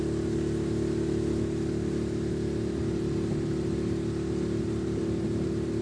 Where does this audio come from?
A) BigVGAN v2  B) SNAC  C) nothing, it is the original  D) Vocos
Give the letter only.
C